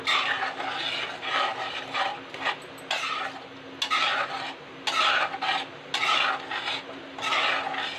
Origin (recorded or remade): recorded